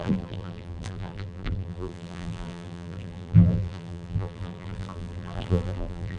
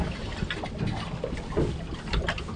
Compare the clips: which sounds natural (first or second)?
second